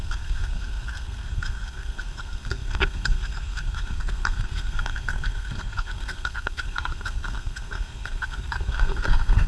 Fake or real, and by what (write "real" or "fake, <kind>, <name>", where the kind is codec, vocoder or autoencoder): fake, codec, SNAC